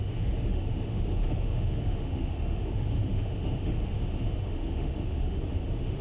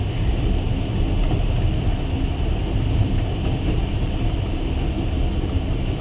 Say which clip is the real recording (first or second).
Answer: second